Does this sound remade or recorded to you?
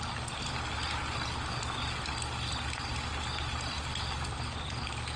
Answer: recorded